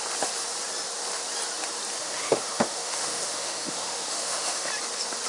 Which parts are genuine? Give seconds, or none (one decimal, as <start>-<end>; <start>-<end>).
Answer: 0.0-2.0; 4.7-5.3

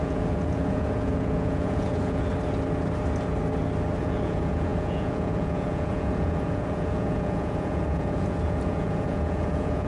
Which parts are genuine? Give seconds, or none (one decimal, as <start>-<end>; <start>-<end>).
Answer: 2.3-4.0

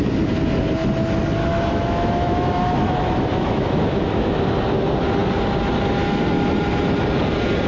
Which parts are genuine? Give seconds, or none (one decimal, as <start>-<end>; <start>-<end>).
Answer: 0.0-1.4; 4.4-7.7

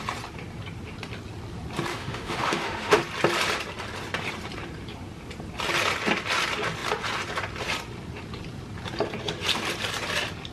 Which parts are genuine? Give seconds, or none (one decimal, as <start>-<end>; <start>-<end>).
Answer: 0.0-1.9; 3.0-10.5